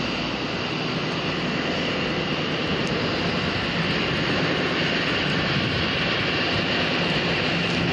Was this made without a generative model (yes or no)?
yes